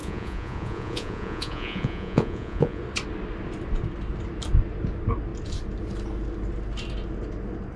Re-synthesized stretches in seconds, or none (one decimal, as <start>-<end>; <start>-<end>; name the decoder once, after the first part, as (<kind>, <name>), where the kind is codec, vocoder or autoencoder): 0.0-2.8 (vocoder, Vocos)